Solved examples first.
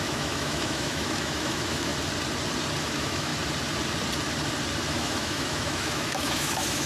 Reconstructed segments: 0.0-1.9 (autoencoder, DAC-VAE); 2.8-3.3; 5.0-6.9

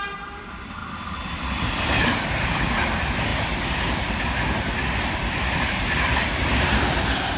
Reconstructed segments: 0.0-0.8 (vocoder, BigVGAN v2); 1.4-3.3; 5.0-7.4

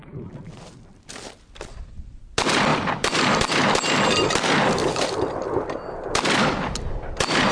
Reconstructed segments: 1.7-2.2 (vocoder, Vocos)

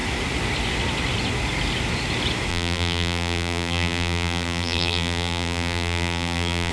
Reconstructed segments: 2.5-6.7 (vocoder, BigVGAN v2)

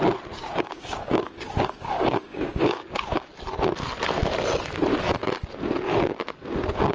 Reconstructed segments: 0.4-3.3 (codec, DAC)

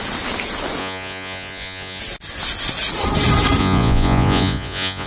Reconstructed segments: 0.8-2.0 (vocoder, Vocos); 3.6-5.1